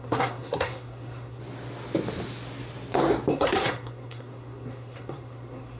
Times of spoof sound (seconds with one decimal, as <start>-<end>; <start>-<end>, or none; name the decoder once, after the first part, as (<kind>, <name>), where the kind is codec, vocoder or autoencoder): 0.0-1.4 (codec, SNAC); 3.3-5.8